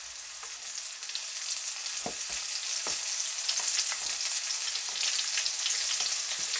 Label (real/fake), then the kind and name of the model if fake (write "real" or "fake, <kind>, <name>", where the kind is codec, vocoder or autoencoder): real